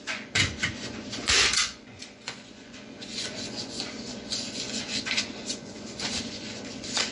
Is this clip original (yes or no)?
no